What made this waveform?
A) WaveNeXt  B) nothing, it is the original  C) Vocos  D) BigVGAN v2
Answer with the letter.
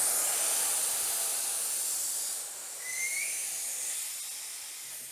B